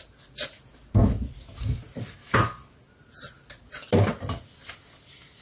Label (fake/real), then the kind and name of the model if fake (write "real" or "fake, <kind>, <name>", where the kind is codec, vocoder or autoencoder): real